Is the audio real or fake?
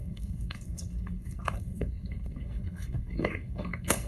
fake